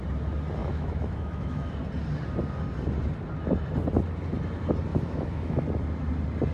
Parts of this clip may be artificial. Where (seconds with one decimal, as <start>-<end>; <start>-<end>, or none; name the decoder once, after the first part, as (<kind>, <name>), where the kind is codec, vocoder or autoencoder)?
0.6-1.7 (autoencoder, DAC-VAE); 4.9-5.6